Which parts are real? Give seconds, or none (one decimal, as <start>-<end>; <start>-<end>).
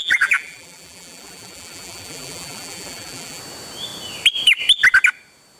3.4-5.6